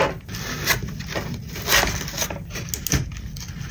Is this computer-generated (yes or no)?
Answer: no